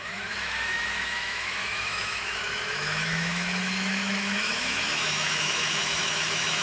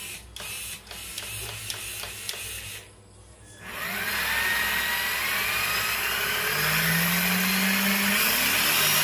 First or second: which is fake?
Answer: first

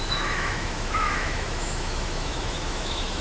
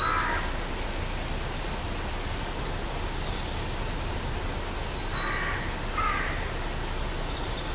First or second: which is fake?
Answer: first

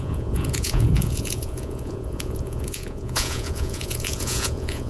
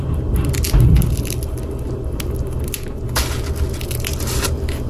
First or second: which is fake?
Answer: first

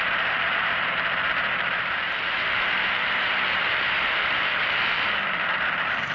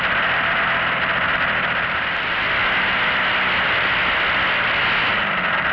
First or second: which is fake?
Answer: first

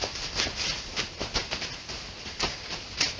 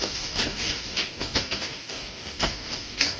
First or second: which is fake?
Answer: second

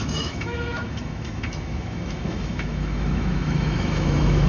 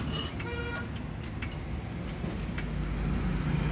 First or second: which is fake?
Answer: first